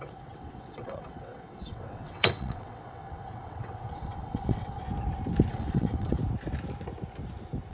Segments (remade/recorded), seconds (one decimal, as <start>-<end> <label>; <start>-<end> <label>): 0.0-4.8 remade; 4.8-5.5 recorded; 5.5-6.2 remade; 6.2-7.7 recorded